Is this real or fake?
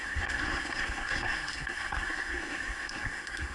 fake